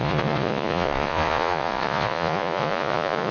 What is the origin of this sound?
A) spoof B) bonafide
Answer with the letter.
A